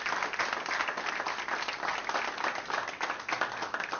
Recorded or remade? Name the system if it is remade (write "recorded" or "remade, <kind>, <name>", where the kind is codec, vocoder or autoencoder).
recorded